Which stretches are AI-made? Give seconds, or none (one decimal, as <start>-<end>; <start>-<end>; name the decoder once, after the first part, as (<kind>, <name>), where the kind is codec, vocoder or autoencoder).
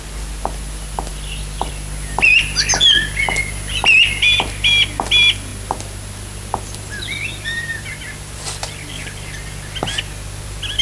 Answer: 1.1-1.7 (vocoder, BigVGAN v2)